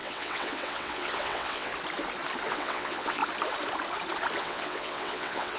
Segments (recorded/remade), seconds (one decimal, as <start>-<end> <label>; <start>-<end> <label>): 0.0-1.7 remade; 1.7-2.5 recorded; 2.5-3.2 remade; 3.2-4.4 recorded; 4.4-5.6 remade